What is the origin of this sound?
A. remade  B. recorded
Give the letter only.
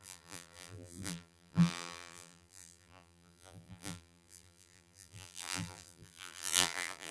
A